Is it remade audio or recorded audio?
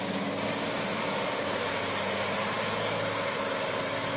recorded